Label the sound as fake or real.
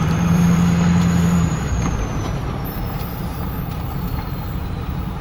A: fake